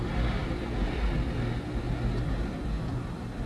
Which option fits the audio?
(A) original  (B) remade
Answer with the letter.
A